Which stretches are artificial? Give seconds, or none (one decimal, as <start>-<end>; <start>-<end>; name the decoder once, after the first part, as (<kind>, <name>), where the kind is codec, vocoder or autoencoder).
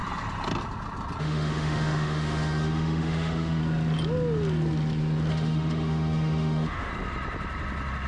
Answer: 1.2-3.6 (autoencoder, DAC-VAE); 5.3-6.9